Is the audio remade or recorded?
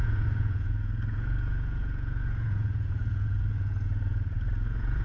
remade